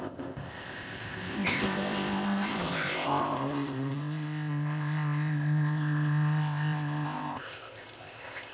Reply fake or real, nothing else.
fake